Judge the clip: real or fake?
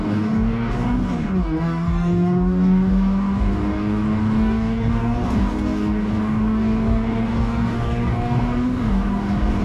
fake